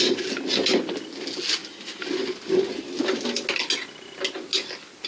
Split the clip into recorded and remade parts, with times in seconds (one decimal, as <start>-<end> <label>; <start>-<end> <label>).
0.0-5.1 recorded